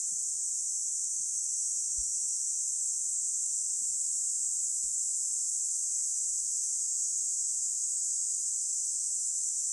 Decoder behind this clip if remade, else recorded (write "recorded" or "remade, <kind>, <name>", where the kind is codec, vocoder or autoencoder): recorded